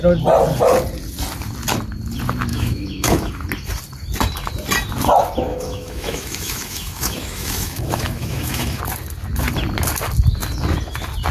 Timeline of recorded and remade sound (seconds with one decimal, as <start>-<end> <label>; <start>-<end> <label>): 0.0-2.5 recorded; 2.5-3.3 remade; 3.3-5.5 recorded; 5.5-8.8 remade; 8.8-11.3 recorded